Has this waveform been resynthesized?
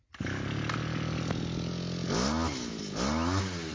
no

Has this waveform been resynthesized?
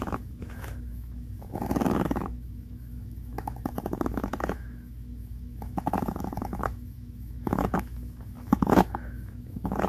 yes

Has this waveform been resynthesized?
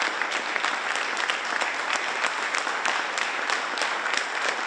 no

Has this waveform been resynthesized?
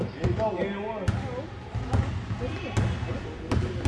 no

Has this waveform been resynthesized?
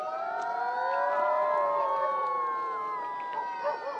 no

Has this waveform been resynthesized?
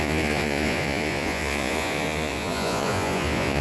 yes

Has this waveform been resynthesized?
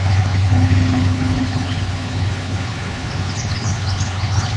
yes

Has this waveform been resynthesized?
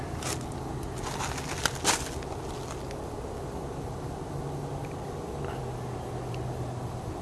no